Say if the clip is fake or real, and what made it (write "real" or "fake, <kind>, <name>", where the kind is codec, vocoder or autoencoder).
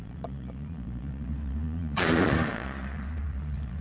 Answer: fake, vocoder, Vocos